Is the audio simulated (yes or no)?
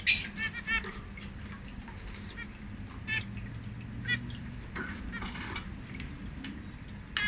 no